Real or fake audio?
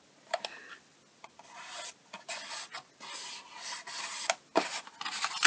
real